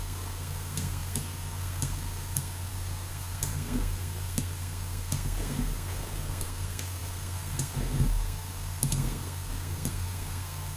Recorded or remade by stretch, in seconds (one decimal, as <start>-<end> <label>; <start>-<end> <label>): 0.0-10.8 remade